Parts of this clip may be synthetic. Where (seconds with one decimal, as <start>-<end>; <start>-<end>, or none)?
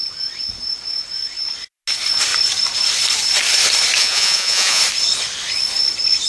4.0-4.8